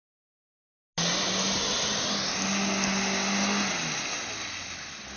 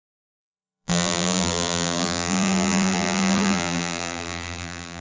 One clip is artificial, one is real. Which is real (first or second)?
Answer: first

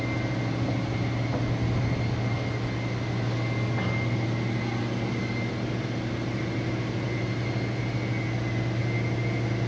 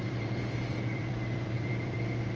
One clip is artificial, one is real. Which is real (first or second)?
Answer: first